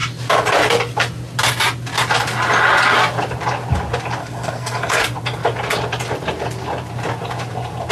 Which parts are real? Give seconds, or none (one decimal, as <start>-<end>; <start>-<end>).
0.0-4.2; 5.0-7.9